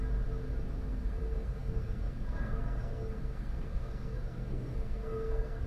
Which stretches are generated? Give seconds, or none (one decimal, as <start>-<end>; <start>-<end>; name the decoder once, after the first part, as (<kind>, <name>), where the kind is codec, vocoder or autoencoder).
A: 0.9-5.7 (codec, SNAC)